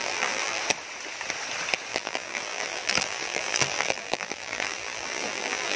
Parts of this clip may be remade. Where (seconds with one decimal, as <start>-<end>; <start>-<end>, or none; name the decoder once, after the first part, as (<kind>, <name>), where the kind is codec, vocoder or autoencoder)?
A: 0.0-0.6 (vocoder, BigVGAN v2); 1.9-5.8